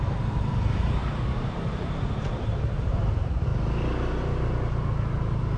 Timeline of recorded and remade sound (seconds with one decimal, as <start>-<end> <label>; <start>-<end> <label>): 0.0-3.5 remade; 3.5-5.0 recorded; 5.0-5.6 remade